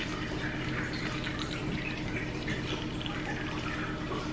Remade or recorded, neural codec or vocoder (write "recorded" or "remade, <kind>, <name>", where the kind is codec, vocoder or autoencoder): recorded